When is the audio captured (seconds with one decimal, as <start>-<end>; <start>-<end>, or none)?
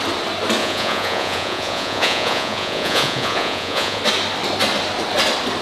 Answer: 0.0-0.6; 4.0-5.6